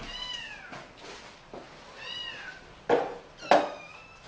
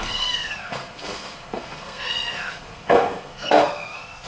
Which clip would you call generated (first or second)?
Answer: second